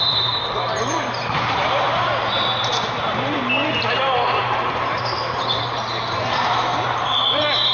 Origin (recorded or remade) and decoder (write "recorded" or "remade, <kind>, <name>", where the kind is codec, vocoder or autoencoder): remade, vocoder, BigVGAN v2